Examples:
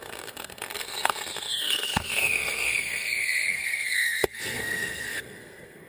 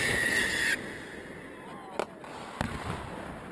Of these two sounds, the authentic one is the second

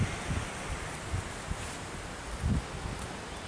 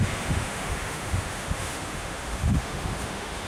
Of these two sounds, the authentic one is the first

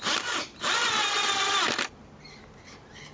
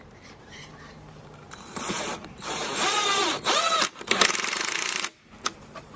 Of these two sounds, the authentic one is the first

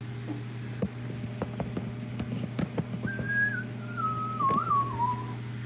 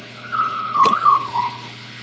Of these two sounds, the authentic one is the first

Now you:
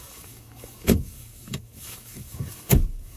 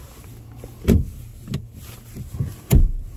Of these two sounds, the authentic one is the second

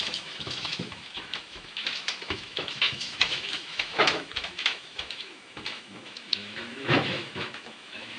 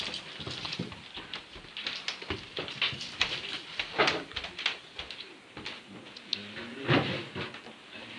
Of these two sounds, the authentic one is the second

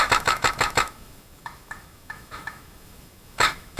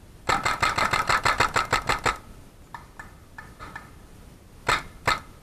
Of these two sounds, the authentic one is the second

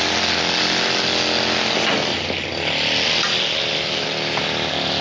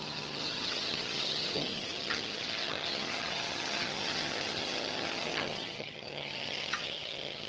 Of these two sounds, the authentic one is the first